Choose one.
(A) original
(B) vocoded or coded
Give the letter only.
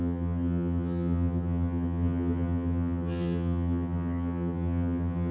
B